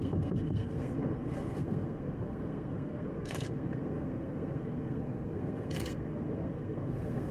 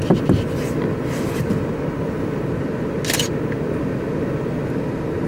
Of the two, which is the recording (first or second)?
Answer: second